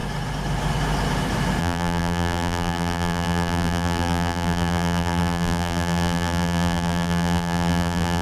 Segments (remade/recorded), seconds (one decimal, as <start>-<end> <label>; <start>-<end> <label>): 0.0-1.6 recorded; 1.6-8.2 remade